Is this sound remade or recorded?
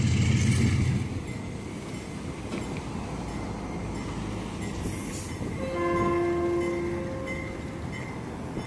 recorded